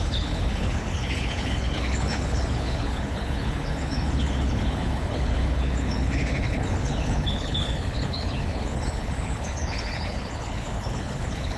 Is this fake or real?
fake